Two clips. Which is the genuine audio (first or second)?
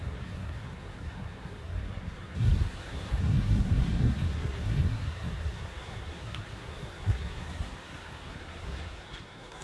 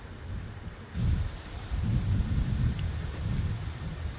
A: second